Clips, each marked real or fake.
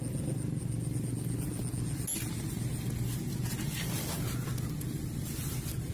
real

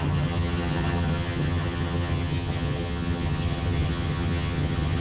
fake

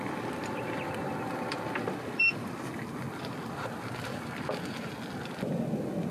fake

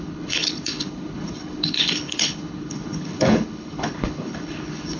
fake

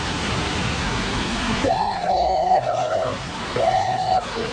fake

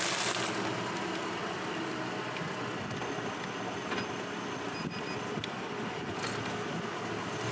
real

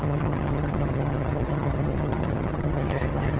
fake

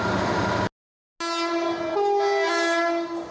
real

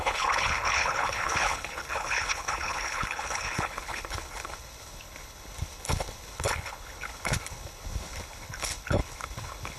fake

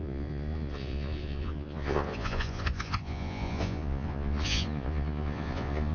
fake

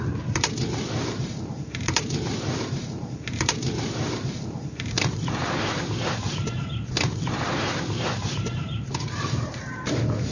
fake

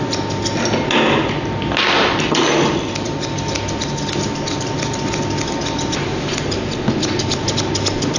real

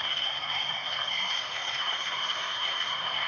fake